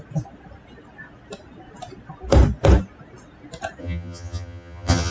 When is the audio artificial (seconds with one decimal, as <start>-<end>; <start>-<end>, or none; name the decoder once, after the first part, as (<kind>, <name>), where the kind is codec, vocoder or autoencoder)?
3.8-5.1 (vocoder, HiFi-GAN)

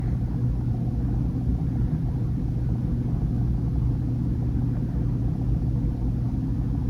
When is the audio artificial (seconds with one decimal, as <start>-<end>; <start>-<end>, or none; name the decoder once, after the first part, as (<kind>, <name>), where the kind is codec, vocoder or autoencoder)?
1.5-2.8 (vocoder, BigVGAN v2)

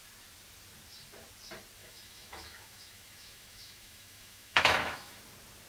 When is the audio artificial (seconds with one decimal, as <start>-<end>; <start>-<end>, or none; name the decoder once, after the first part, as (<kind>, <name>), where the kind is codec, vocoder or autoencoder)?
1.8-5.2 (autoencoder, DAC-VAE)

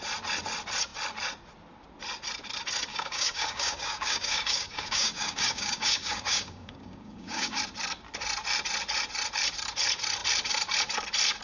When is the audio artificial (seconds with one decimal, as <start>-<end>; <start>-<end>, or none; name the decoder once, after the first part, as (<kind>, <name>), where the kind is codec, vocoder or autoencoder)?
2.9-7.6 (codec, DAC)